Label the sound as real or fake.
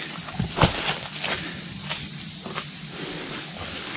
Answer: real